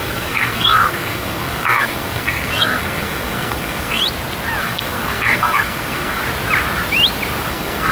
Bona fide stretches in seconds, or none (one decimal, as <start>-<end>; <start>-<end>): 4.0-4.6; 6.2-7.5